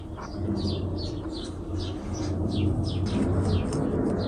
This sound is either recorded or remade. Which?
recorded